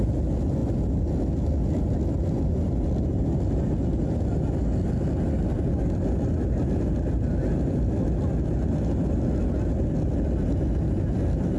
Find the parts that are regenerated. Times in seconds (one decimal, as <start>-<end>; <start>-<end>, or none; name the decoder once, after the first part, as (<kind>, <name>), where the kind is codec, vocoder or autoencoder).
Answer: none